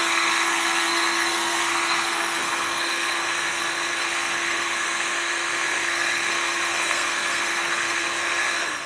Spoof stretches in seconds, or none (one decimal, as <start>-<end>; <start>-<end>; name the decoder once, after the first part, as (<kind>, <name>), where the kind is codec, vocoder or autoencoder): 0.0-8.9 (codec, SNAC)

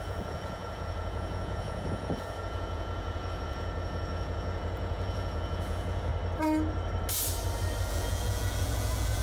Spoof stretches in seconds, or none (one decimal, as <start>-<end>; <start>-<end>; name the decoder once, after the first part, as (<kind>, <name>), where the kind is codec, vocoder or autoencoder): 0.0-6.1 (vocoder, Vocos); 7.9-9.2

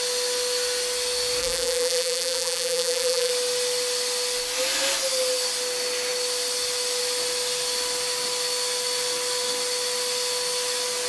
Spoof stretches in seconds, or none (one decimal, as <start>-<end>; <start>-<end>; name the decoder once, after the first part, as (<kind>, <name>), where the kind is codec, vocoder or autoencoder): 1.4-3.3 (vocoder, BigVGAN v2)

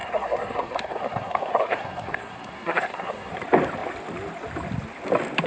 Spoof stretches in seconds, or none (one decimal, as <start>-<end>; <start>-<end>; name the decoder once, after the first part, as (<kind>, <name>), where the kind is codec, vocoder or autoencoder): 0.0-3.3 (codec, SNAC)

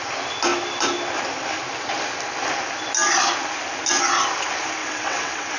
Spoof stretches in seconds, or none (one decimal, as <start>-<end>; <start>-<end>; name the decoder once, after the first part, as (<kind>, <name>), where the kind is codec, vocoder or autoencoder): 4.8-5.6 (vocoder, WaveNeXt)

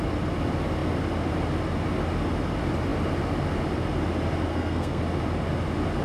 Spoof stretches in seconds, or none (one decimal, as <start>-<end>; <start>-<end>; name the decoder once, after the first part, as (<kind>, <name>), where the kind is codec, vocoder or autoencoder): 4.5-5.0 (codec, SNAC)

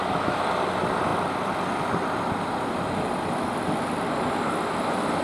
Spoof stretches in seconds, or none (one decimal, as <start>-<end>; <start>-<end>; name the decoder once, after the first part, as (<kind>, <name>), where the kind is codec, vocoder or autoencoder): none